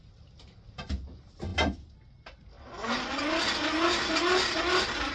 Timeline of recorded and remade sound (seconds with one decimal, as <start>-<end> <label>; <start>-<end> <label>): 0.0-5.1 recorded